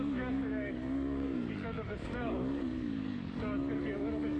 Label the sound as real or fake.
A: fake